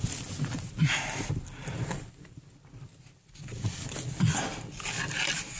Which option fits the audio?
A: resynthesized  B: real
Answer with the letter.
B